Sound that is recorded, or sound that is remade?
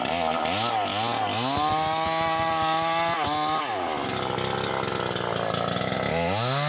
recorded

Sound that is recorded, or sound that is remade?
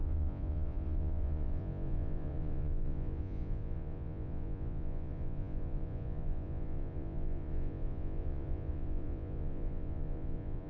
remade